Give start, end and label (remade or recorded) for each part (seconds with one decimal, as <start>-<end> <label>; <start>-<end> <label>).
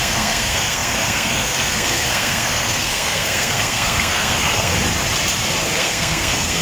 0.0-4.7 remade; 4.7-5.8 recorded; 5.8-6.6 remade